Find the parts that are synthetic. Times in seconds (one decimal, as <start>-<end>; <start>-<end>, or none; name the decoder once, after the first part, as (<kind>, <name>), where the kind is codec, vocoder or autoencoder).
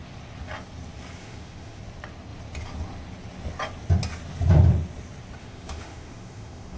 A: 1.2-1.8 (autoencoder, DAC-VAE); 5.4-6.8